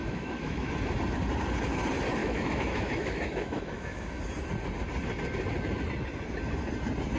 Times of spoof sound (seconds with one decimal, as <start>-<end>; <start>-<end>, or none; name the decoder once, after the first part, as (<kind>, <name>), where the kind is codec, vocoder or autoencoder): 0.0-0.7 (autoencoder, DAC-VAE); 2.2-4.2